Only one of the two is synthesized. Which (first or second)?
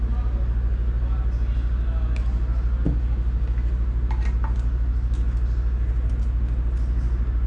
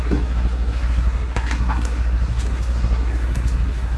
second